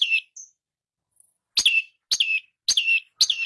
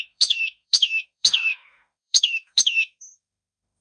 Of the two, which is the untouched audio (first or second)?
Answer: first